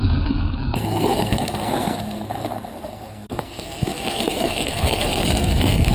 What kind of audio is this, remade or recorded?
remade